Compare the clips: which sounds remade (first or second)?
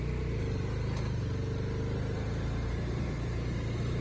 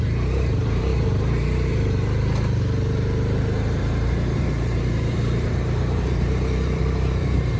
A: second